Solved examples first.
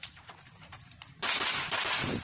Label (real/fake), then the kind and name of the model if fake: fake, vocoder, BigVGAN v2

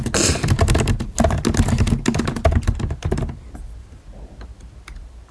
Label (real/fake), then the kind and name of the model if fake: real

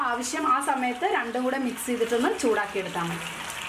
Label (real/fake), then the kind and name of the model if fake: real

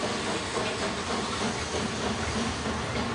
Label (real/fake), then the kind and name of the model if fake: real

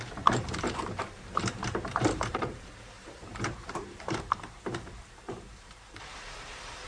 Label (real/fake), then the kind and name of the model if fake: fake, vocoder, BigVGAN v2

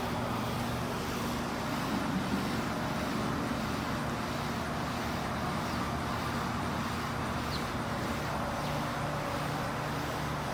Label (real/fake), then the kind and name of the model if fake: real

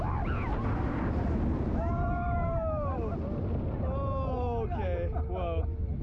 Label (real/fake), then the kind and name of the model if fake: real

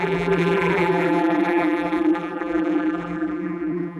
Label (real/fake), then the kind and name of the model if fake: fake, vocoder, BigVGAN v2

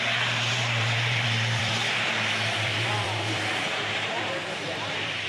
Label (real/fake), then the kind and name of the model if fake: fake, vocoder, BigVGAN v2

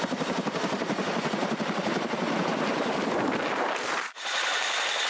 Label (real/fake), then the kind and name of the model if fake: fake, vocoder, BigVGAN v2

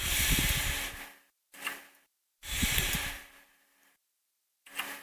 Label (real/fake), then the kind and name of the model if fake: real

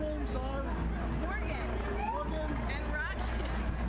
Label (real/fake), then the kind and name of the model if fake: real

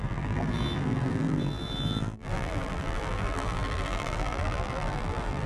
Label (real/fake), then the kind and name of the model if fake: fake, vocoder, BigVGAN v2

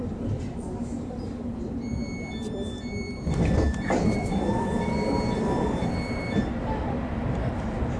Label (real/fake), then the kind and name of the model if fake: fake, vocoder, BigVGAN v2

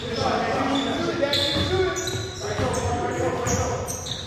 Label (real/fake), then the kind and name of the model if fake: real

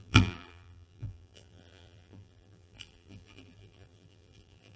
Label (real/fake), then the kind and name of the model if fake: fake, vocoder, BigVGAN v2